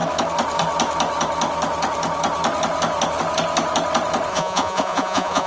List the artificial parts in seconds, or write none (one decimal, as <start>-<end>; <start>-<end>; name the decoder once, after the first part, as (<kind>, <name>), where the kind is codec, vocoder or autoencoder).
4.3-5.5 (vocoder, Vocos)